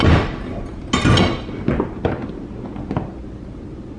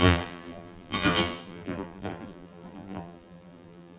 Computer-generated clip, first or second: second